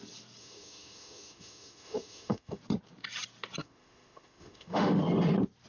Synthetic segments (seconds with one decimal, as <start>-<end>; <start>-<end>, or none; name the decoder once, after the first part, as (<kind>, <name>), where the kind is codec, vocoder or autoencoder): 0.4-2.6 (autoencoder, DAC-VAE); 3.6-5.0